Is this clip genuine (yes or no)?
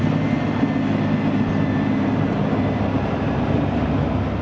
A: yes